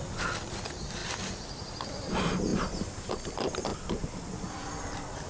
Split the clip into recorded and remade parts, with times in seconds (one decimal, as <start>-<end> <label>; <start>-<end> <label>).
0.0-1.0 recorded; 1.0-2.1 remade; 2.1-3.7 recorded; 3.7-4.6 remade; 4.6-5.3 recorded